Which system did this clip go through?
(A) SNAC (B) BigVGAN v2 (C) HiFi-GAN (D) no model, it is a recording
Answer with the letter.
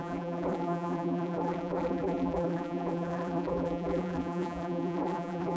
B